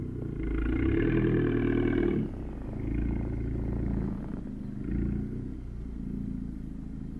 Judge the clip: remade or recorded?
recorded